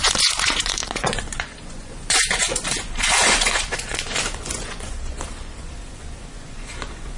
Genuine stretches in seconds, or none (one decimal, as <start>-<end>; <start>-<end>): none

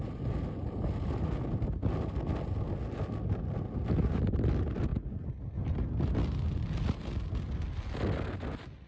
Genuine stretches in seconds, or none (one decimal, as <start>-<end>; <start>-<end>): 0.0-8.9